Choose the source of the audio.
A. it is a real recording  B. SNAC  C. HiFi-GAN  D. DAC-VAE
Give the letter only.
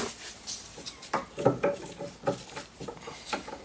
A